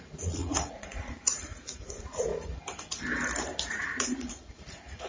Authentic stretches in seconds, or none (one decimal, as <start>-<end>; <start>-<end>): 2.3-3.7

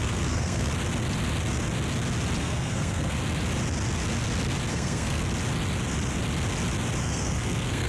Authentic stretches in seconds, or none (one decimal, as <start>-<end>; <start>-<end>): 0.7-2.4; 3.2-4.7; 5.2-7.0

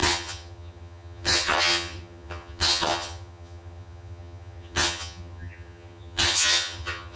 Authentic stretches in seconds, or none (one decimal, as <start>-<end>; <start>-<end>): none

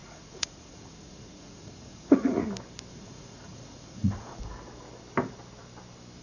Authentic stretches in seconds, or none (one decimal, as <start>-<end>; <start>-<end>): 2.4-2.9; 4.4-6.2

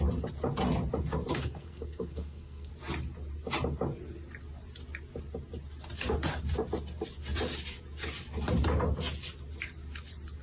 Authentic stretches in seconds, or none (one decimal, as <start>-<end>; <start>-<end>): 0.0-1.3; 2.7-10.4